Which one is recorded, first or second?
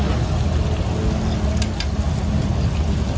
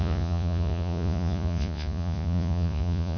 first